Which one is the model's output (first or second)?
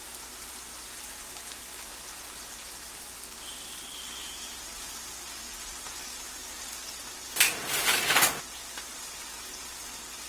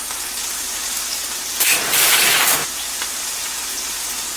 second